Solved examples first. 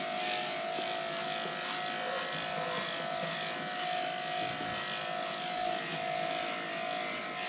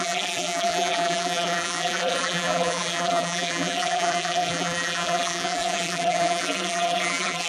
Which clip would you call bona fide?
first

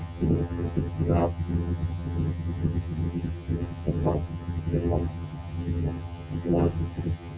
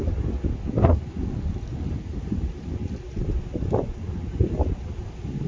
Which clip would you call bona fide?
second